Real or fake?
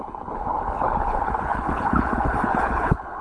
fake